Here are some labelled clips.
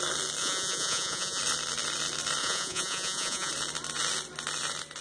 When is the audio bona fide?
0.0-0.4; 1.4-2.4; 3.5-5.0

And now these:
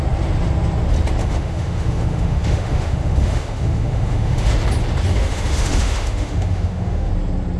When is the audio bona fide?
0.0-1.2; 4.5-5.1; 7.1-7.6

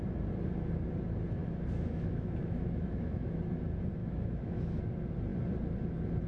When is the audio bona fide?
0.0-1.4; 3.4-4.0; 4.8-6.3

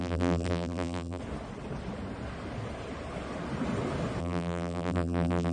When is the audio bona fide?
1.2-4.2

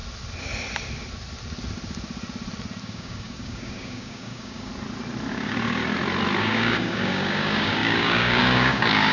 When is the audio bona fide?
0.0-2.8; 4.7-5.3; 5.8-6.4

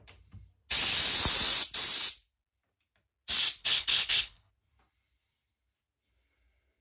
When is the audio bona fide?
0.0-3.6; 4.5-6.8